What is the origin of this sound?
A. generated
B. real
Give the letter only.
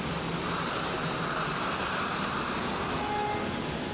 B